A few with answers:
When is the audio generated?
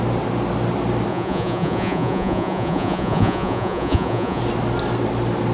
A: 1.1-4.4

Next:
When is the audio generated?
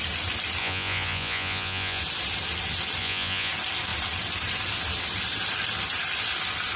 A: 0.6-2.0; 3.0-3.5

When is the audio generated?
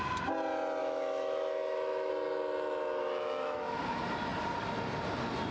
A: 0.8-2.1; 3.0-3.8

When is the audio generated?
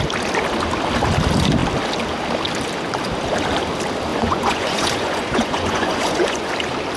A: 4.1-6.5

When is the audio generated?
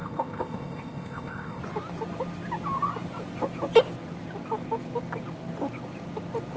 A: 0.0-1.6